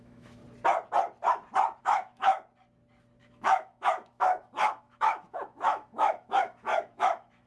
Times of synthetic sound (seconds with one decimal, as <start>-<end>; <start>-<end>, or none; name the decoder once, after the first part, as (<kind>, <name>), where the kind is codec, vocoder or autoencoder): 0.0-0.4 (autoencoder, DAC-VAE); 1.8-2.3; 3.2-7.5